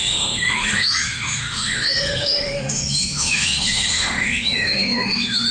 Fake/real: fake